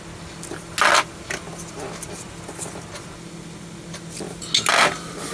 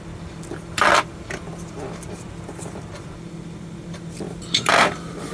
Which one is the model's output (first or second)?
second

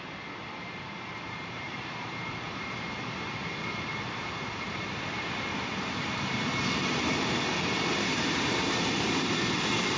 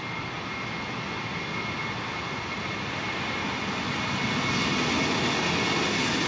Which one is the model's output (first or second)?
first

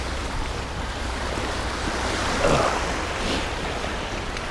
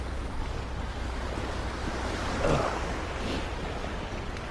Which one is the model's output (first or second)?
first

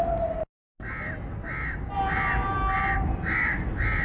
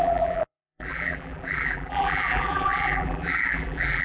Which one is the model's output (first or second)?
second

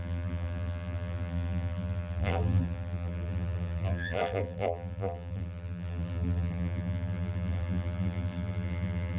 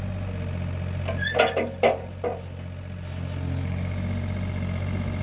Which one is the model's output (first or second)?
first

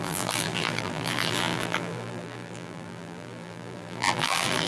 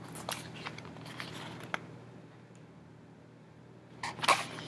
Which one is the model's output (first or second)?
first